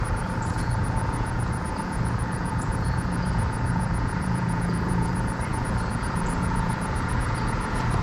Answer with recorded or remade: remade